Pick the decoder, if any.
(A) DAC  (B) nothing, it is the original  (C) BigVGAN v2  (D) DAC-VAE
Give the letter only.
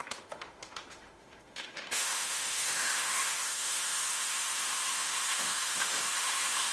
D